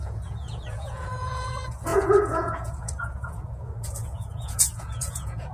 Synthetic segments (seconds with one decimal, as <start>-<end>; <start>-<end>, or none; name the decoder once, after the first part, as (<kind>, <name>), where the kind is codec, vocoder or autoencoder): 0.0-5.5 (vocoder, Vocos)

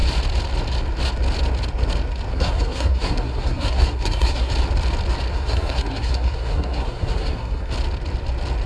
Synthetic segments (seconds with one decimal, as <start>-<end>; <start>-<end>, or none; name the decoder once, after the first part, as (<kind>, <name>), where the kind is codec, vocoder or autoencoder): 2.3-4.5 (codec, SNAC); 5.3-7.7

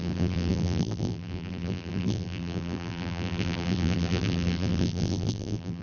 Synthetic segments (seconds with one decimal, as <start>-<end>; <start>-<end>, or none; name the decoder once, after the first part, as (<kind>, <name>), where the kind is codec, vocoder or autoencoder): 0.0-5.8 (vocoder, BigVGAN v2)

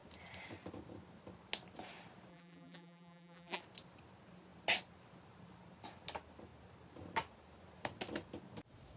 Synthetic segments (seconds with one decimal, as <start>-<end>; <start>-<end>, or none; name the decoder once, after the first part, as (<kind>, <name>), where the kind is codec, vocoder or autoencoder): 2.3-3.6 (vocoder, BigVGAN v2)

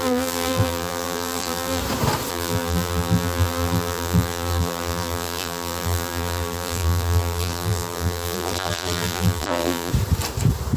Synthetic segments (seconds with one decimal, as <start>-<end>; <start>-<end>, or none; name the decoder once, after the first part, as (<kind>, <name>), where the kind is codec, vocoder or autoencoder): 0.0-1.8 (vocoder, BigVGAN v2); 2.3-9.9

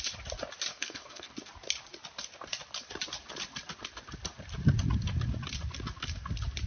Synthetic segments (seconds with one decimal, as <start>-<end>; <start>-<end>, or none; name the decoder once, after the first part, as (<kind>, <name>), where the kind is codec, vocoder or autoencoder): 0.7-1.3 (codec, SNAC)

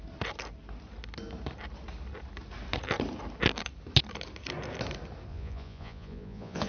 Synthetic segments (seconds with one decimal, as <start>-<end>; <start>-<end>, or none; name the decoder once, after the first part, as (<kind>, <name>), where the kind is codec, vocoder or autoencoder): 5.3-6.7 (vocoder, Vocos)